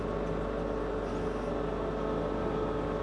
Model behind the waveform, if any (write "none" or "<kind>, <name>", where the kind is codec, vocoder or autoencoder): none